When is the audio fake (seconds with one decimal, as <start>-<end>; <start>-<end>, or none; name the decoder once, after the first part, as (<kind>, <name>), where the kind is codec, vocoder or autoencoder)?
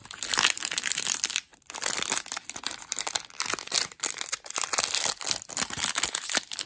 0.8-6.7 (vocoder, BigVGAN v2)